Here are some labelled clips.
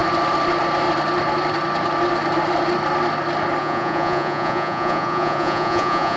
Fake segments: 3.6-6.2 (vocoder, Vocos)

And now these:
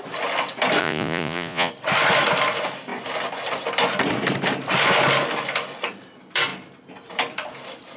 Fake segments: 0.8-1.7 (vocoder, Vocos)

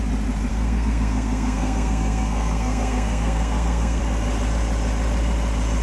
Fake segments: 0.5-4.0 (codec, SNAC)

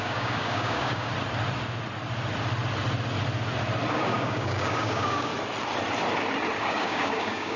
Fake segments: 0.0-1.1 (codec, DAC); 3.9-5.3; 6.6-7.6

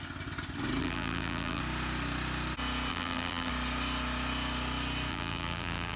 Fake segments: 0.8-1.6 (vocoder, BigVGAN v2); 2.9-3.5; 5.1-6.0

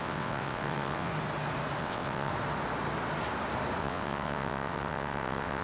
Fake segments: 0.0-1.1 (vocoder, WaveNeXt); 1.8-2.3; 3.8-5.6